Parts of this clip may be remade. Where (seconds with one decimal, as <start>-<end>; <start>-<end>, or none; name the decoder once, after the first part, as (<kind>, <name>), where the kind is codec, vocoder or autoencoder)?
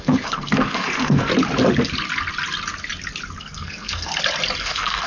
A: 0.0-1.3 (codec, SNAC); 3.4-4.1; 4.6-5.1